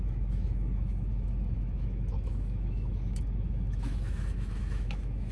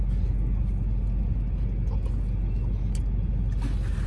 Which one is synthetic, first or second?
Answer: first